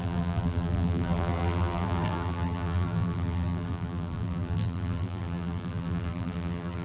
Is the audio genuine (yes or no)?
no